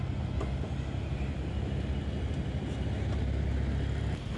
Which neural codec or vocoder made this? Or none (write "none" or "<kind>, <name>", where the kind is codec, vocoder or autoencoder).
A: none